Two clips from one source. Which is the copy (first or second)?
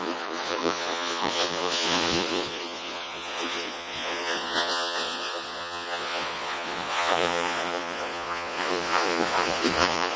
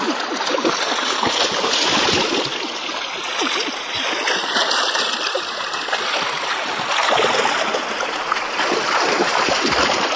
first